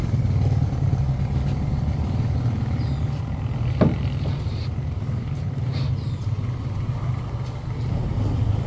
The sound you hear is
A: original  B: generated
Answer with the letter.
A